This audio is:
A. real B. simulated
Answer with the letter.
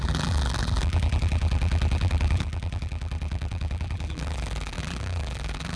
B